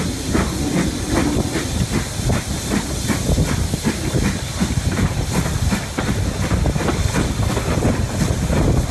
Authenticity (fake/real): real